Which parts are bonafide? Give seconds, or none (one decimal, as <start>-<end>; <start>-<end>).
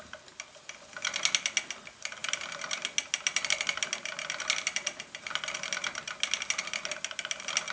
0.0-7.7